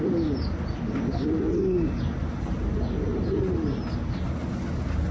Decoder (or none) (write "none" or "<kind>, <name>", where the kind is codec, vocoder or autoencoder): none